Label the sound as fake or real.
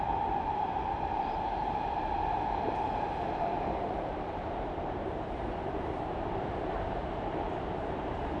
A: fake